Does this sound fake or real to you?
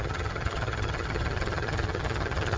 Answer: fake